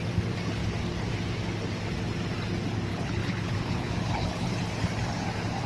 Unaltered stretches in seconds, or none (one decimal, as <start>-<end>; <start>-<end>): 0.0-2.9; 4.5-5.7